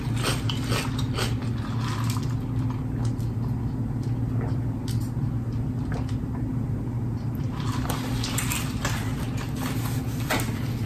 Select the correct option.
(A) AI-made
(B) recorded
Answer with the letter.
B